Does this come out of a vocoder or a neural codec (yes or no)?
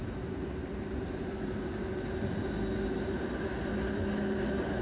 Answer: no